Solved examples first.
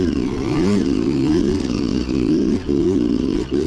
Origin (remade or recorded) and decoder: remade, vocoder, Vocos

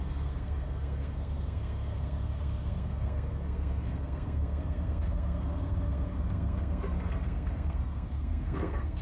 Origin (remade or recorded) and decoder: remade, codec, SNAC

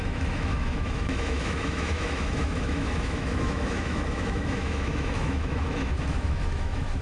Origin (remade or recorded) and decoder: remade, autoencoder, DAC-VAE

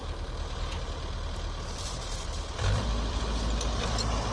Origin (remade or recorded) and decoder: remade, vocoder, BigVGAN v2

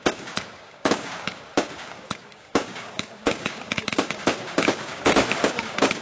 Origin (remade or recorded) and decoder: remade, codec, DAC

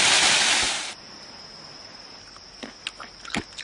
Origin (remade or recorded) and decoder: recorded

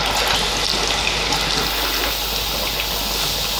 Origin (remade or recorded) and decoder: recorded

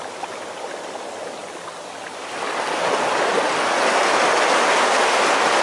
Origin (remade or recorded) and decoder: recorded